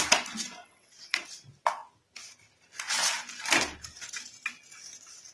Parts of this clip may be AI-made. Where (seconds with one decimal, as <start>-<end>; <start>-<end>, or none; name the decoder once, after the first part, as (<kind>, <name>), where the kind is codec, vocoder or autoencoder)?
0.6-1.2 (vocoder, WaveNeXt)

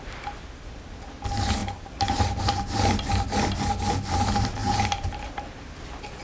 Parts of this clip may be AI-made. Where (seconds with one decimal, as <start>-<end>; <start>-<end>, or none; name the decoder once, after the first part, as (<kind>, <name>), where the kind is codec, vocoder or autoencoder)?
4.6-5.6 (vocoder, BigVGAN v2)

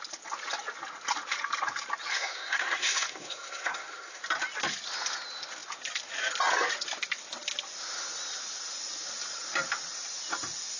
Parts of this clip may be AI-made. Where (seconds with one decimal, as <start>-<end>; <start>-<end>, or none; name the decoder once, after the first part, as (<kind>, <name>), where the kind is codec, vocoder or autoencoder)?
2.1-4.2 (codec, SNAC)

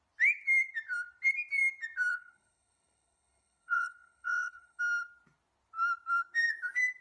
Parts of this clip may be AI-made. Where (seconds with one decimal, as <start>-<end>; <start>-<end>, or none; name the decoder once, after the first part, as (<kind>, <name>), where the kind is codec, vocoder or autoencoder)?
2.1-4.8 (codec, HILCodec)

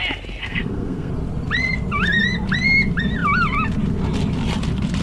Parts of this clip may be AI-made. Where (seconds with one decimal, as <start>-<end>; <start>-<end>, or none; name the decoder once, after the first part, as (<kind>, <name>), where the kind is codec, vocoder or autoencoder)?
0.4-1.1 (codec, SNAC)

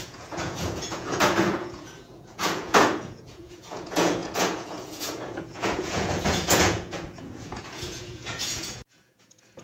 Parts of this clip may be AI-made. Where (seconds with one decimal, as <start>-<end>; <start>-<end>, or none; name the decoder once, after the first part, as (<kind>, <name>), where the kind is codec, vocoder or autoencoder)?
0.0-9.6 (vocoder, Vocos)

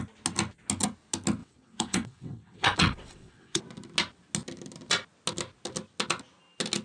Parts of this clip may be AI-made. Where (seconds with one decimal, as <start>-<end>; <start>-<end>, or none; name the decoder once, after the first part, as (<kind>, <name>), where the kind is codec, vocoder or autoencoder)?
1.4-3.6 (vocoder, WaveNeXt)

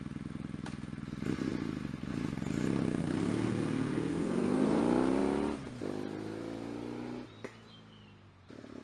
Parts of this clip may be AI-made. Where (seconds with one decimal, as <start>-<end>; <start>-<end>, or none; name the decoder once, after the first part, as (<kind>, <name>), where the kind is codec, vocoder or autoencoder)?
3.0-4.8 (codec, SNAC)